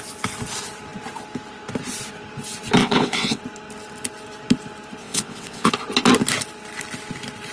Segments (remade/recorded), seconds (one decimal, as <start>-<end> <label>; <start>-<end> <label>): 0.0-2.8 recorded; 2.8-3.4 remade; 3.4-5.0 recorded; 5.0-5.7 remade; 5.7-7.5 recorded